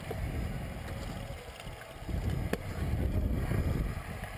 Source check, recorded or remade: recorded